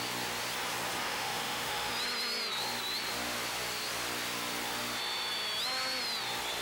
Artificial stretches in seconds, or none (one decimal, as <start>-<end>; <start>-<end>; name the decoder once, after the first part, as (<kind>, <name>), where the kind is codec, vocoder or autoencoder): 1.0-1.9 (autoencoder, DAC-VAE)